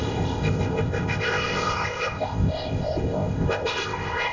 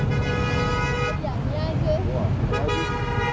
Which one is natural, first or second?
second